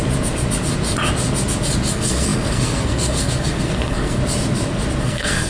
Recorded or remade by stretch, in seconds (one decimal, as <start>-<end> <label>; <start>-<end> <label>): 0.0-1.9 recorded; 1.9-4.2 remade; 4.2-5.0 recorded; 5.0-5.5 remade